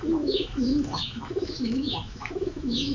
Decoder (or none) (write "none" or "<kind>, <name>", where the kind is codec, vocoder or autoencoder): autoencoder, DAC-VAE